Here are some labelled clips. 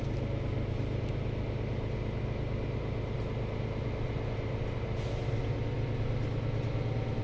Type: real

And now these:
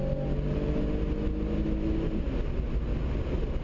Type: real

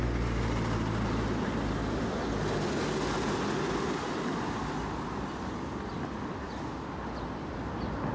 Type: real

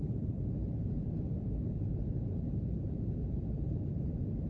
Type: fake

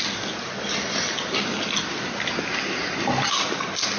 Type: real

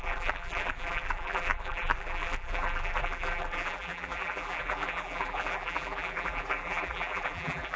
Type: fake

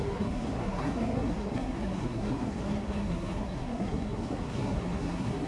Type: fake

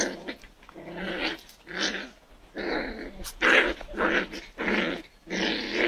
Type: real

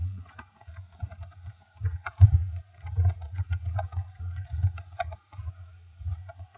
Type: fake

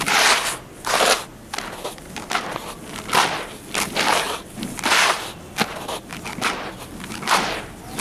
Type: real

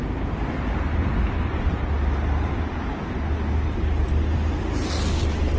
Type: real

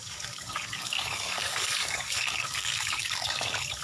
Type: fake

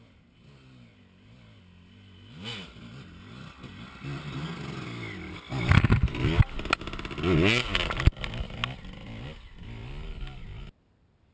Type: real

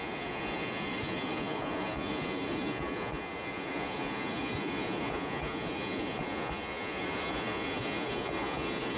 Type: fake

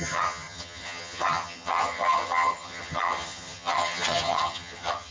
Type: fake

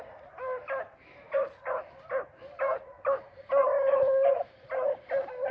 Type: real